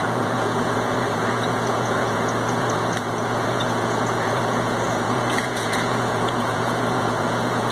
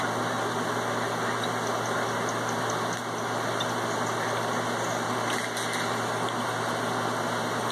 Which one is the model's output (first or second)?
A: first